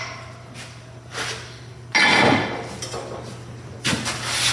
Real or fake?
real